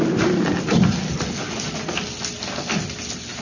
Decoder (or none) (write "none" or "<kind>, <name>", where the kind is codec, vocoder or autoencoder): none